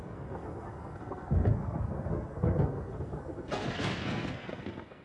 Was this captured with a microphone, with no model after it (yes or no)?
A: no